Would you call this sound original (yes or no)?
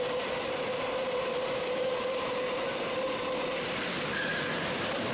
yes